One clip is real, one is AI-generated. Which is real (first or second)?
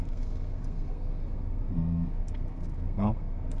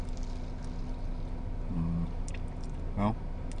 second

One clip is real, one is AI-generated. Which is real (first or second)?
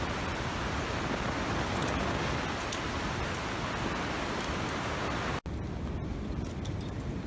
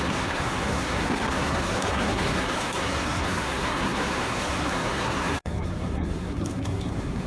first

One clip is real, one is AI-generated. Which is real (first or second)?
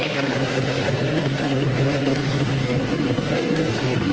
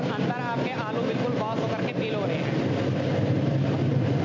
second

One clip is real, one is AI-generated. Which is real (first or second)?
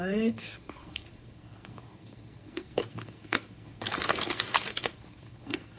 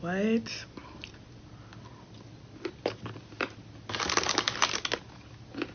second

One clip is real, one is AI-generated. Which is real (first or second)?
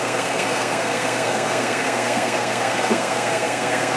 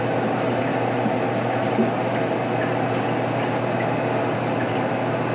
second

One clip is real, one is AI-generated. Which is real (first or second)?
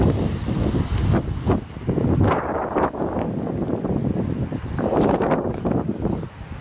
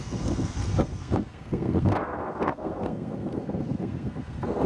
first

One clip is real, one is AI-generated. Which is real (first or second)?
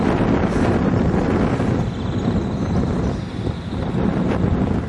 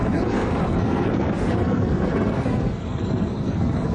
first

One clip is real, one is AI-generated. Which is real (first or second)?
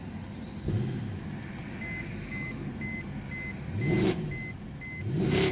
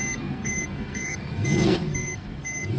first